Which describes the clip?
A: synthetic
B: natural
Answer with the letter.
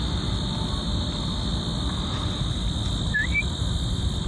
B